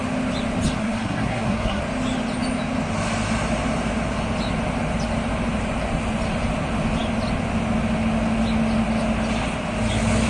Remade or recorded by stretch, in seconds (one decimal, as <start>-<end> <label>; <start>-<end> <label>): 0.0-0.8 recorded; 0.8-1.8 remade; 1.8-10.3 recorded